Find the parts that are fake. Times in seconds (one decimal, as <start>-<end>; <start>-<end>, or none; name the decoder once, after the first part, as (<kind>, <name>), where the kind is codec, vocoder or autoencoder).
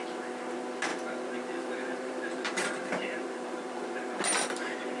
0.9-3.9 (vocoder, BigVGAN v2)